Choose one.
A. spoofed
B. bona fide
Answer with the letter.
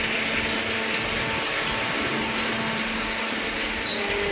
B